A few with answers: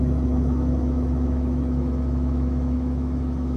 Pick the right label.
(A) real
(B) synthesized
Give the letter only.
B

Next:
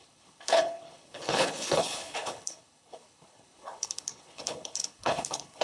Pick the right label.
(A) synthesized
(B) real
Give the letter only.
A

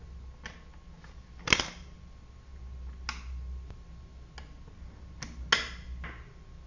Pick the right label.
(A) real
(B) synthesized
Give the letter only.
A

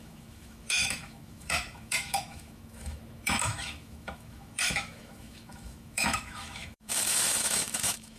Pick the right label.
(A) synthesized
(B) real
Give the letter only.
A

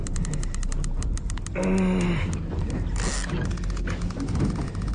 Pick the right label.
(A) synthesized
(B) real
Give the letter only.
B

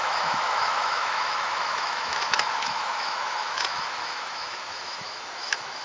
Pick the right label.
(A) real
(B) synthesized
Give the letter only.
B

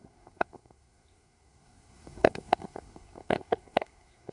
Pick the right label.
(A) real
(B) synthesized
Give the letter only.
B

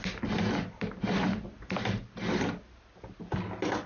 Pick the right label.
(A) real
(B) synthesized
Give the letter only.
A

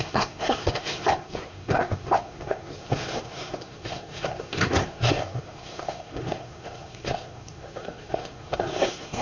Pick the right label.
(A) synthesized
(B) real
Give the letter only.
A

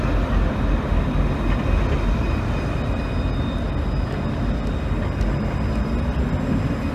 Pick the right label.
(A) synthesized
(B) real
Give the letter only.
B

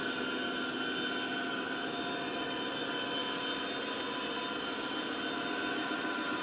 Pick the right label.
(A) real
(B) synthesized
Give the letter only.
A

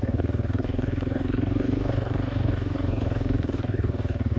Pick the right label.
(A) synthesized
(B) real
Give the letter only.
A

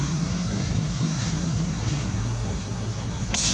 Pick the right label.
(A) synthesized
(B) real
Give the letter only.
A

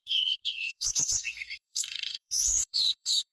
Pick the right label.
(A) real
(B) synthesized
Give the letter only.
B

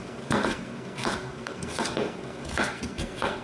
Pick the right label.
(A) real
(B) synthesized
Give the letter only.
B